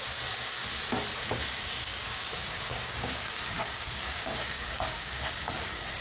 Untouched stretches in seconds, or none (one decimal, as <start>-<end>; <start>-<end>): 0.6-1.1